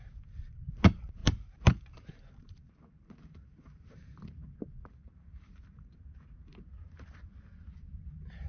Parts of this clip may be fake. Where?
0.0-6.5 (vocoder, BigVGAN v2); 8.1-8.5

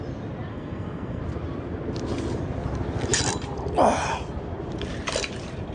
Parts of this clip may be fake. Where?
0.5-1.2 (codec, SNAC)

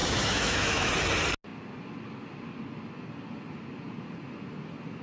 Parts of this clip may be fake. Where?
0.0-0.9 (autoencoder, DAC-VAE)

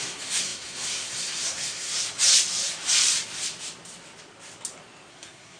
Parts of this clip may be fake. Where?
0.0-1.9 (codec, SNAC); 5.1-5.6

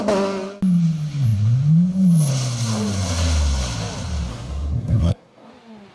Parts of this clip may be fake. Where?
4.3-5.5 (codec, SNAC)

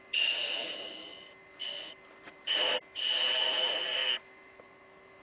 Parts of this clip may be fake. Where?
none

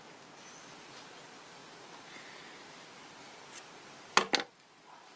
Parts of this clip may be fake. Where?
none

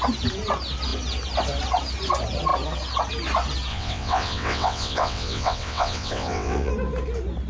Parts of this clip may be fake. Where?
3.7-6.7 (vocoder, WaveNeXt)